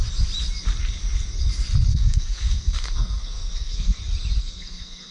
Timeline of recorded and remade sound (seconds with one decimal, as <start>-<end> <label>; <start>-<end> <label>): 0.0-1.9 recorded; 1.9-4.0 remade; 4.0-4.4 recorded; 4.4-5.1 remade